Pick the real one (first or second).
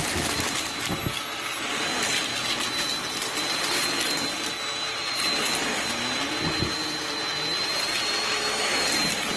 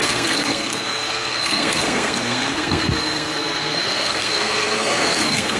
first